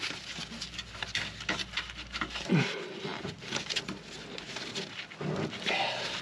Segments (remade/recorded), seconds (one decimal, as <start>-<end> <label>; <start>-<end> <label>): 0.0-6.2 recorded